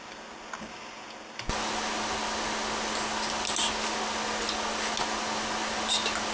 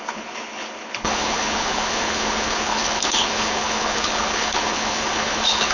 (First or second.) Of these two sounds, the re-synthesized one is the second